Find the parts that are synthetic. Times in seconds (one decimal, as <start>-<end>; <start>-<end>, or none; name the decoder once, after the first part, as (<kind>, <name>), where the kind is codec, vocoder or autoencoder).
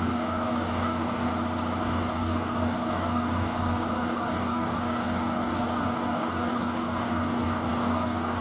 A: 0.0-1.3 (codec, DAC); 1.8-8.4